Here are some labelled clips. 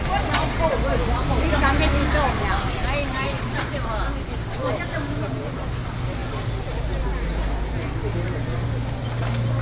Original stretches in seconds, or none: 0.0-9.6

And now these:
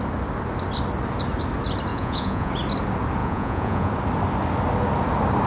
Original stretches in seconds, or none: 0.0-1.9; 2.5-3.2; 3.9-5.5

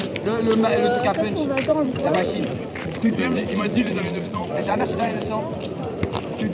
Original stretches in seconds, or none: 0.0-1.7; 5.3-6.5

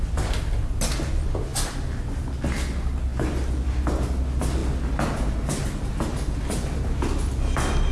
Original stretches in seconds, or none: 0.0-7.9

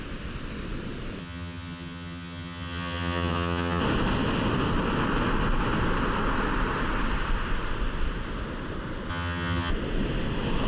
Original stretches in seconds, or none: 0.0-1.2; 3.8-9.1; 9.7-10.7